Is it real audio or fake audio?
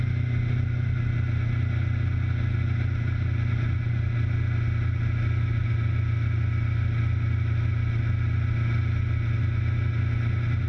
real